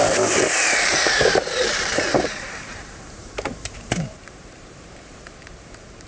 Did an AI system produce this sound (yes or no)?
yes